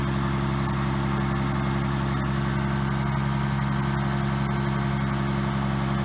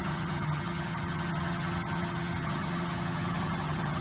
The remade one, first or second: second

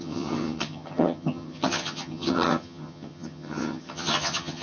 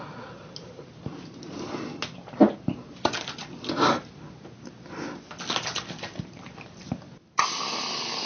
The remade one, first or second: first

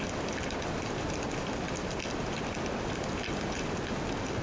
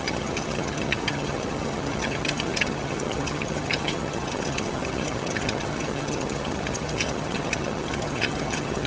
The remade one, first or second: second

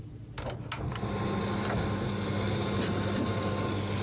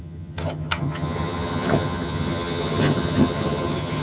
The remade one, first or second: second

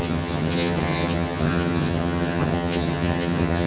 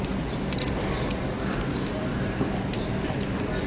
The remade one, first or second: first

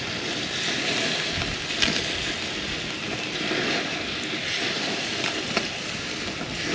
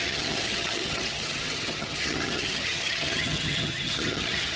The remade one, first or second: second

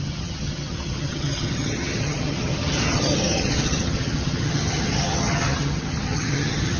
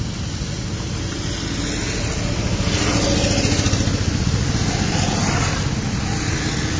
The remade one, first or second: first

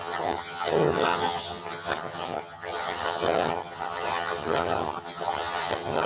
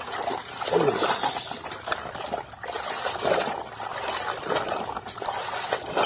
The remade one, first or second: first